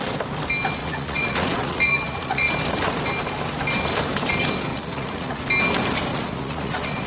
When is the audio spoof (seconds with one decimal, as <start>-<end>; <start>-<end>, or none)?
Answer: 0.8-2.5; 4.7-5.4; 6.1-7.1